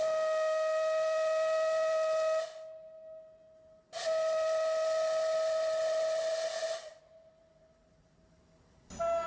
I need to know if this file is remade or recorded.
recorded